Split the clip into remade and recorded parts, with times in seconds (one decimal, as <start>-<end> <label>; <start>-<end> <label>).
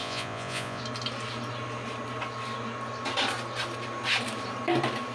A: 0.0-0.8 remade; 0.8-5.1 recorded